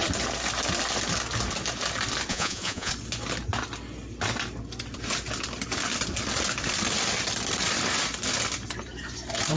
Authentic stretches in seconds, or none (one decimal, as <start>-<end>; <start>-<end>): 0.0-2.3; 2.9-9.6